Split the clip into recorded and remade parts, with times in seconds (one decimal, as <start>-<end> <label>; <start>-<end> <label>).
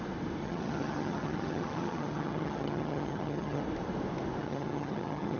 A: 0.0-0.4 recorded; 0.4-3.6 remade; 3.6-4.4 recorded; 4.4-5.4 remade